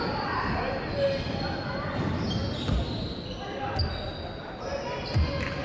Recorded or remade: recorded